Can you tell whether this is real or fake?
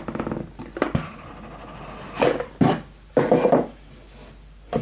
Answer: real